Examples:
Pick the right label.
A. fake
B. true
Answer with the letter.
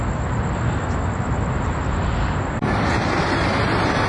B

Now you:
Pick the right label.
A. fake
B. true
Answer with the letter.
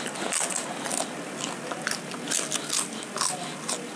B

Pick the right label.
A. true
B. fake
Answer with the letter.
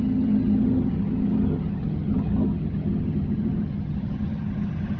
B